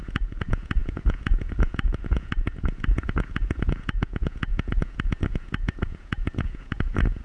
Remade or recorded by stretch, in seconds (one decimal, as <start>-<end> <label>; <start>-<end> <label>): 0.0-7.2 remade